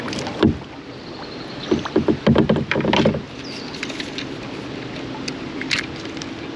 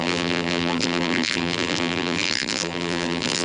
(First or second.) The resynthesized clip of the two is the second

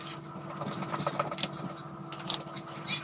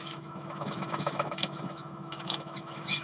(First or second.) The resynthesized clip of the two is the second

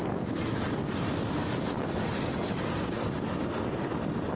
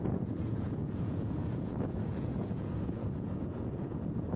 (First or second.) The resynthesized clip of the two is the second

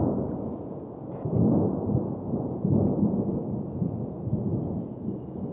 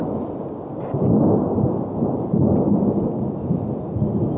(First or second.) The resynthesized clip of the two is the first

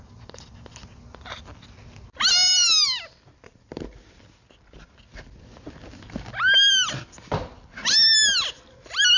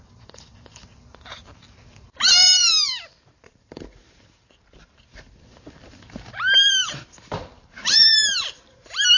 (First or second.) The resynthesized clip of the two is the second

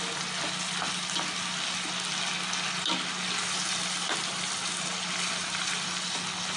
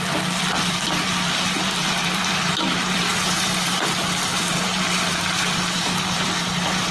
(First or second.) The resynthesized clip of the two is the second